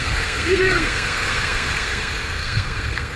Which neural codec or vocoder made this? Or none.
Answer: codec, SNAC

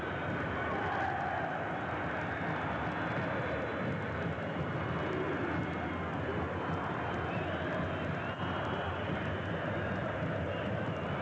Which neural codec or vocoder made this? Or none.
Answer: none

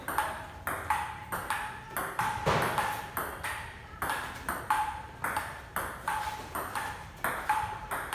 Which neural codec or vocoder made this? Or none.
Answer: none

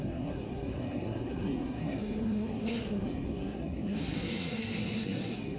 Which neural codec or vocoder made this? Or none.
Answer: codec, SNAC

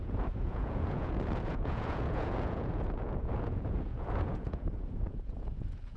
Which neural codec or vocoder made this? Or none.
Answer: vocoder, Vocos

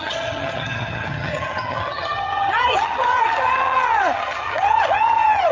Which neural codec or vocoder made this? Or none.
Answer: vocoder, HiFi-GAN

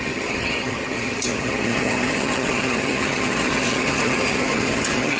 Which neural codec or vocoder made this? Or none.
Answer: vocoder, HiFi-GAN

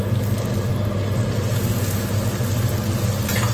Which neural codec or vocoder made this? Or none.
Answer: none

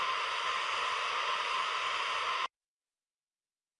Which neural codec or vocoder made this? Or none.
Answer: none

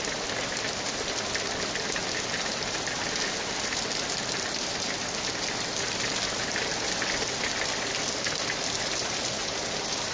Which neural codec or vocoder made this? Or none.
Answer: none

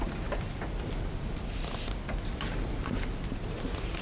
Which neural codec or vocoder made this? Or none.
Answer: none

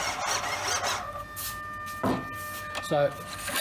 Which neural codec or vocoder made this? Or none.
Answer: none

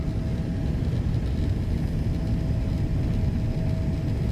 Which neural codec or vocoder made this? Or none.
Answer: none